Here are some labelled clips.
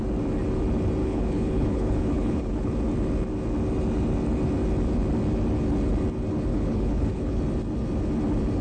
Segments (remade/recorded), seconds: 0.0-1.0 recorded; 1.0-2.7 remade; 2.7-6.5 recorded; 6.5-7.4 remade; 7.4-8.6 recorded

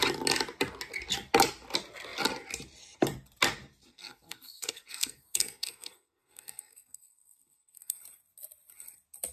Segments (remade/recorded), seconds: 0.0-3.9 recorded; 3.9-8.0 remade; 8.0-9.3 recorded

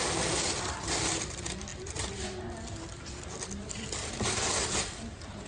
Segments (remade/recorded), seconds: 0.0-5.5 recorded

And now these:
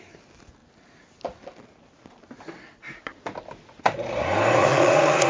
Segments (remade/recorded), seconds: 0.0-4.6 recorded; 4.6-5.3 remade

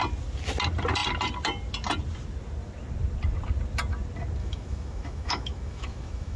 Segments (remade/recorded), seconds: 0.0-4.4 recorded; 4.4-6.4 remade